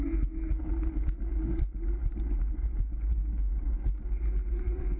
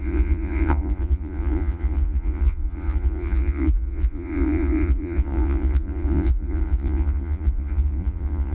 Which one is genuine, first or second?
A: first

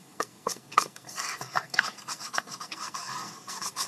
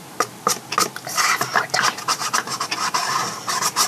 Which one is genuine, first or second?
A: second